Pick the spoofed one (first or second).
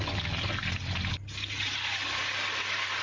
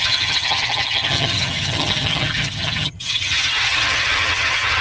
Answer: second